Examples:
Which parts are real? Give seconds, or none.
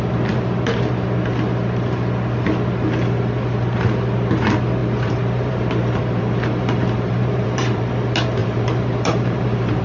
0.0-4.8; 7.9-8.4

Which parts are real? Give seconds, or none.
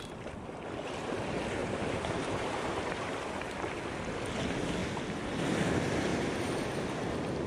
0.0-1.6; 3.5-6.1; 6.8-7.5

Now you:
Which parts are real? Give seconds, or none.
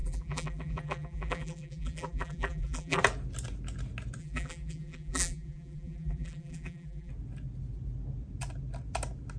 3.0-4.2; 7.1-9.4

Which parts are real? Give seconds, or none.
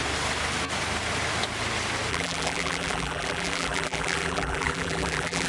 0.0-2.1